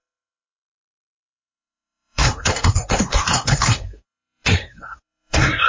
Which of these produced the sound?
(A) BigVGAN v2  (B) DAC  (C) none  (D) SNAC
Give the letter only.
D